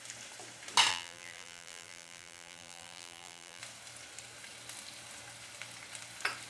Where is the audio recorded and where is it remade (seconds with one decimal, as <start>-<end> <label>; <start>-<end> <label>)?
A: 0.0-0.9 recorded; 0.9-3.6 remade; 3.6-6.5 recorded